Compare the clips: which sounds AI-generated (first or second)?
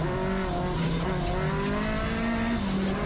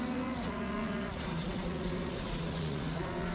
second